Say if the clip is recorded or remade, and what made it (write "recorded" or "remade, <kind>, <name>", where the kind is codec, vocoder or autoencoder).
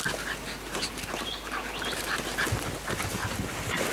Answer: recorded